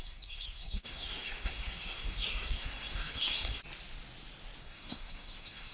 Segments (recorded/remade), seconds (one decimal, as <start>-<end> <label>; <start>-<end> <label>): 0.0-3.6 remade; 3.6-4.6 recorded; 4.6-5.7 remade